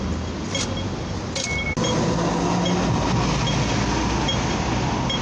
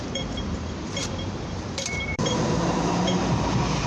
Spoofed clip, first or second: second